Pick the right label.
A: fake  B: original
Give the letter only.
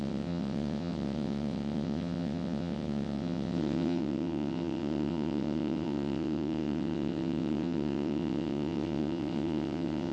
A